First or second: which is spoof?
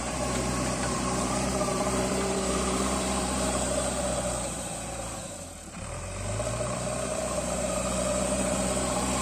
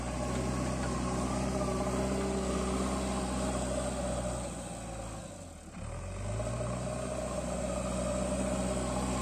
first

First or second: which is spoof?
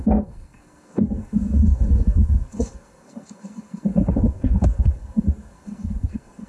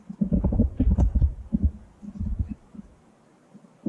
first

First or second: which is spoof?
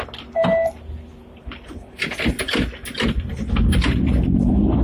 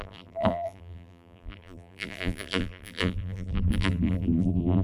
second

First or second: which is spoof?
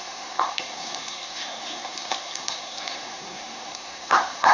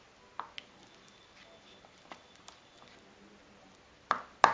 first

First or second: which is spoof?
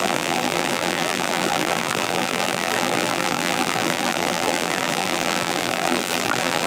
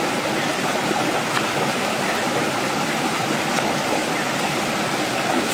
first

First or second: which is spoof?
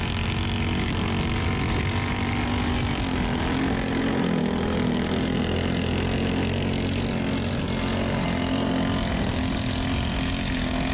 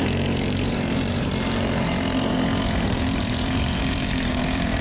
second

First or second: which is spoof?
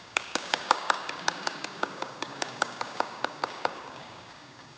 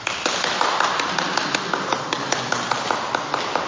first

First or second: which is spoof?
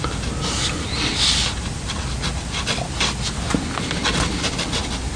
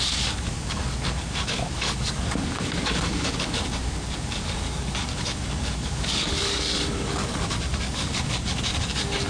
second